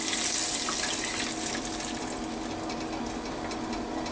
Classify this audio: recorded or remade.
recorded